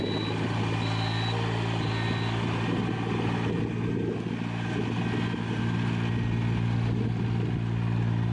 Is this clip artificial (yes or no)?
no